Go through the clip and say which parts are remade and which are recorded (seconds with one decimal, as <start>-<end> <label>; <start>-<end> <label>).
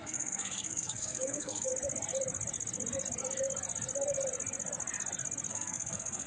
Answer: 0.0-1.7 remade; 1.7-5.5 recorded; 5.5-6.3 remade